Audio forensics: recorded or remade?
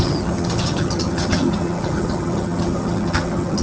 remade